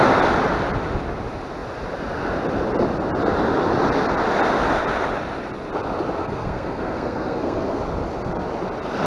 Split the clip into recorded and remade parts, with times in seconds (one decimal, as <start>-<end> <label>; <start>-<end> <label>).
0.0-6.2 recorded; 6.2-7.8 remade; 7.8-9.1 recorded